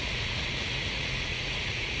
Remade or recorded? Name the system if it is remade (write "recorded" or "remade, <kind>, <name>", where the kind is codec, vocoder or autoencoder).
remade, vocoder, Vocos